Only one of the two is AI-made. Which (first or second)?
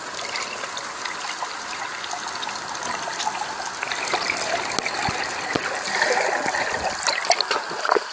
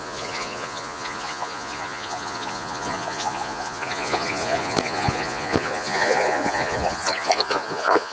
second